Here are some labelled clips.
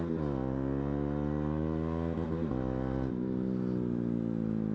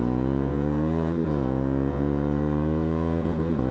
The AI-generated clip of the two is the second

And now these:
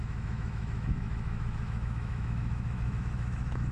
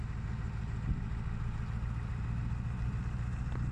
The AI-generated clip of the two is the first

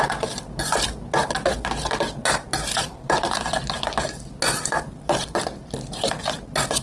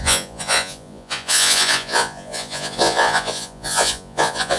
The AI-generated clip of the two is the second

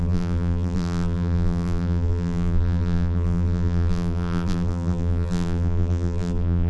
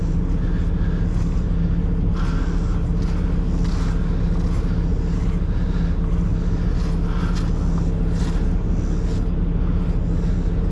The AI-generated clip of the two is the first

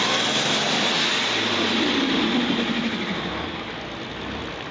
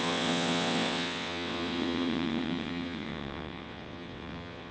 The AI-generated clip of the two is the second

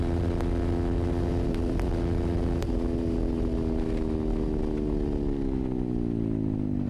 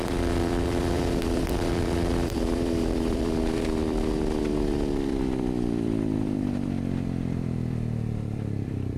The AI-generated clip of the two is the second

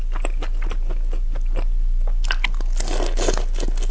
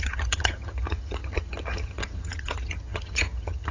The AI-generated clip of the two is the second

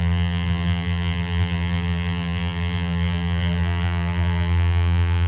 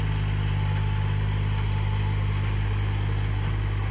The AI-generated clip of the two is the first